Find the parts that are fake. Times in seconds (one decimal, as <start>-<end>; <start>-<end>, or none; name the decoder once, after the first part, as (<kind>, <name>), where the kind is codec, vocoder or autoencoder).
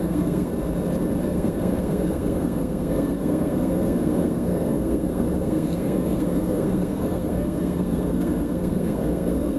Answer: 0.0-0.5 (codec, SNAC); 1.2-9.6